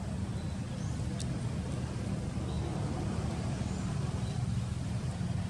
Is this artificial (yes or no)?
no